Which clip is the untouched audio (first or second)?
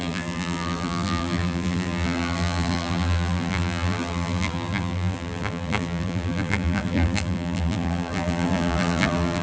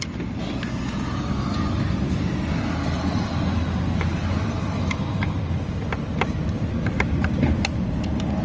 second